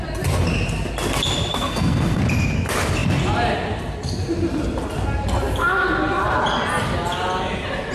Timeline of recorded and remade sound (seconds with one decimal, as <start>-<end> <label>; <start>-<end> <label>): 0.0-1.5 recorded; 1.5-2.2 remade; 2.2-7.9 recorded